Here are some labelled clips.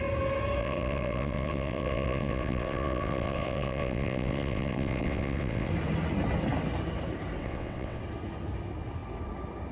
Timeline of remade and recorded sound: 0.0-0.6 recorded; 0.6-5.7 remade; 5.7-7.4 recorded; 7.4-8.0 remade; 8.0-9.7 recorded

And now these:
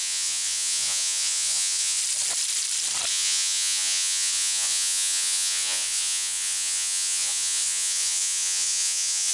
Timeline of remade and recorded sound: 0.0-2.0 remade; 2.0-3.1 recorded; 3.1-9.3 remade